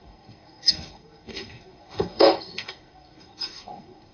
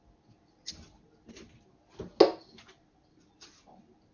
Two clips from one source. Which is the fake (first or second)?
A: first